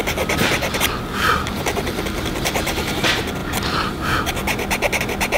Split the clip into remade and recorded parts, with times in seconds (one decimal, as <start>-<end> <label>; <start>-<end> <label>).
0.0-5.4 recorded